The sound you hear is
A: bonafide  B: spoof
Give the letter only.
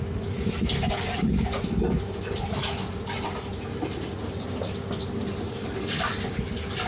A